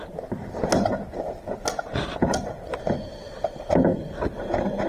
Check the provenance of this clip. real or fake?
real